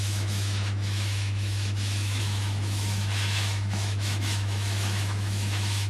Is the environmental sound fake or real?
fake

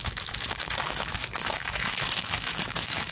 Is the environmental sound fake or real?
fake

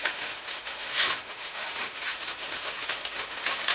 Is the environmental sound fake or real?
fake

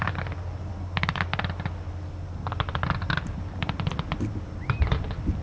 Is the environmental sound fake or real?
real